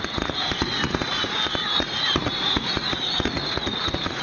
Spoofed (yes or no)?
yes